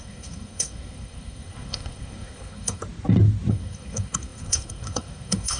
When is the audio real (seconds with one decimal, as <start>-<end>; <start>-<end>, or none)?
2.8-3.5

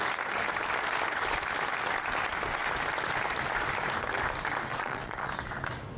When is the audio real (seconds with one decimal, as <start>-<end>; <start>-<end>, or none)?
0.0-4.7; 5.3-6.0

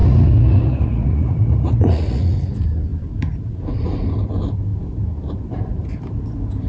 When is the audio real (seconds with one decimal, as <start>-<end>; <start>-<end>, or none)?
2.5-6.7

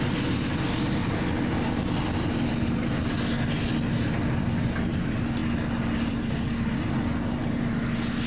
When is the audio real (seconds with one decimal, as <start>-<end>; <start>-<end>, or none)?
0.0-8.3

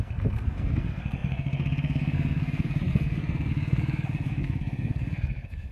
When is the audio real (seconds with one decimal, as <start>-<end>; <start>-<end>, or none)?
none

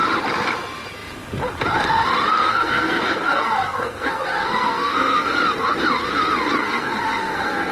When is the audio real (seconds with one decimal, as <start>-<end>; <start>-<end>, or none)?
0.0-2.3; 5.3-6.6

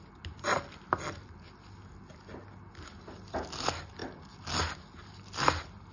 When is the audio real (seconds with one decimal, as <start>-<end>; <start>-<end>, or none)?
0.0-5.9